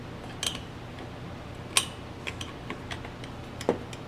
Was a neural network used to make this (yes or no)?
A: no